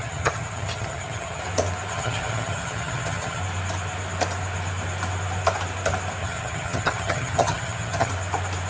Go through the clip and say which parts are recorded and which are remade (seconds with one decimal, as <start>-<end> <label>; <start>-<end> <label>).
0.0-1.4 remade; 1.4-1.9 recorded; 1.9-3.4 remade; 3.4-6.2 recorded; 6.2-8.1 remade; 8.1-8.7 recorded